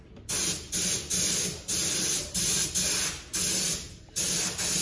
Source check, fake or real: real